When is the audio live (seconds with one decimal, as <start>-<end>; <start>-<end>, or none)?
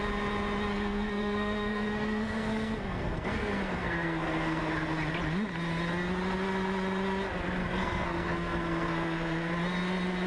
0.0-0.7; 4.6-7.6; 9.5-10.3